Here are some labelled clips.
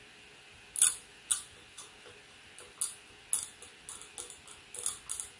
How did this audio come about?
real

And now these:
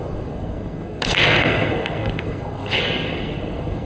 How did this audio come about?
fake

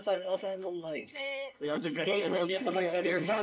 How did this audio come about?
fake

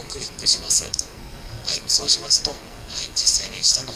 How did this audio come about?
fake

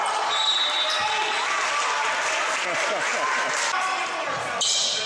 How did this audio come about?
real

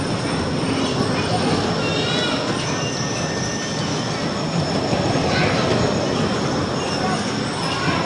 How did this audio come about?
real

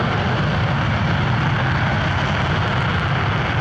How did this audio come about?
real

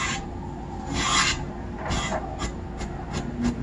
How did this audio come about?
real